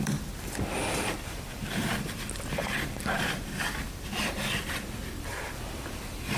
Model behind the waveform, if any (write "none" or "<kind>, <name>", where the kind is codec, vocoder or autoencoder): vocoder, BigVGAN v2